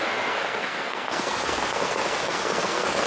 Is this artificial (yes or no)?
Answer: yes